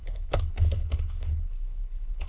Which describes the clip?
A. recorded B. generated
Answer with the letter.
B